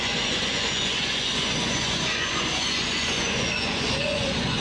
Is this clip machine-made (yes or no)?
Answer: yes